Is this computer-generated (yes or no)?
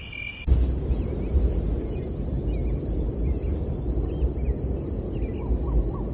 no